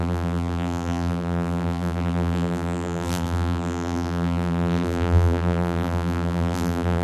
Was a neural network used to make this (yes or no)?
yes